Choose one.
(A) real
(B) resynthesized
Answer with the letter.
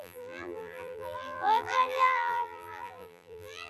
B